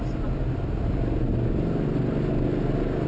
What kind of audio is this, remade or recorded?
recorded